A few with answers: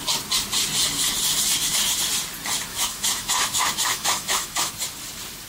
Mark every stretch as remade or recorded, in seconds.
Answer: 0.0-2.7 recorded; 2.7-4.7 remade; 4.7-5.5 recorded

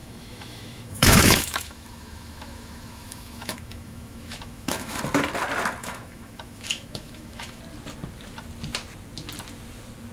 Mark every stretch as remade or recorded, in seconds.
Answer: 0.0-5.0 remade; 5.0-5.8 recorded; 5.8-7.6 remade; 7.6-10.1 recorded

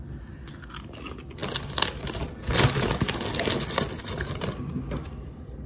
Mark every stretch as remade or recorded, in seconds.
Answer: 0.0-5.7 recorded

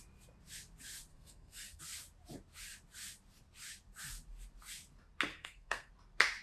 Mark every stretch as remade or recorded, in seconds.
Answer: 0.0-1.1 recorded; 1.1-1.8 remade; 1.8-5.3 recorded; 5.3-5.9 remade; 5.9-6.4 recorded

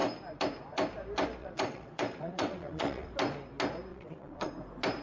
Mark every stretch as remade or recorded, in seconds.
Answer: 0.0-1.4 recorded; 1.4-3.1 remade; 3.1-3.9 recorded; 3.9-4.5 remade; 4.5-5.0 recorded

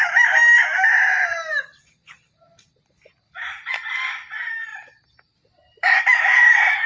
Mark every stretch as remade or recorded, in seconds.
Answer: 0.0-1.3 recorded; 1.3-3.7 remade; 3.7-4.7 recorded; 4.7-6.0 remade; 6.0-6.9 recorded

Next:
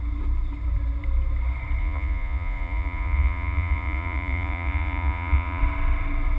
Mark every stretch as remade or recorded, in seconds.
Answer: 0.0-1.8 recorded; 1.8-5.6 remade; 5.6-6.4 recorded